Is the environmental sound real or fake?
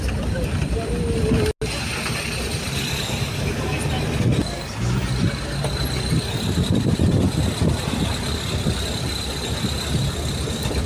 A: real